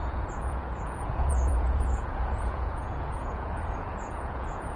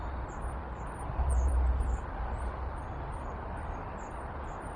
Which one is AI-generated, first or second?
first